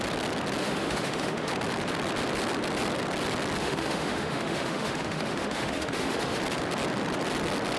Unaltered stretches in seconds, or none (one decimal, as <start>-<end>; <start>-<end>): 0.0-0.6; 1.5-3.6; 6.4-7.8